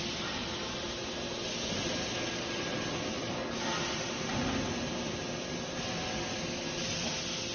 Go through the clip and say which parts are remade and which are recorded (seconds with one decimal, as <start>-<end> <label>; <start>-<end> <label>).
0.0-7.5 recorded